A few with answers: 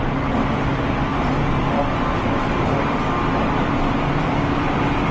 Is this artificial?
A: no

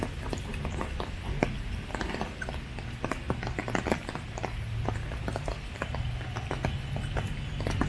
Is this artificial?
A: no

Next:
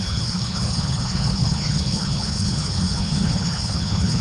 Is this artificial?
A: yes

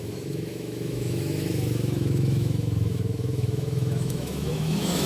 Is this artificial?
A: yes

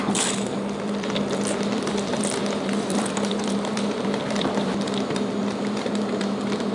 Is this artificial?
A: yes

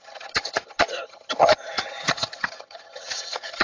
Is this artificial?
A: yes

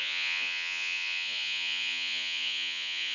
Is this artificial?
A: yes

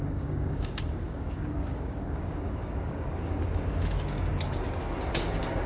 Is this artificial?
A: yes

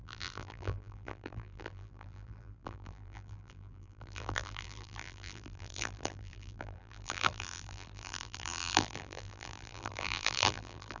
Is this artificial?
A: yes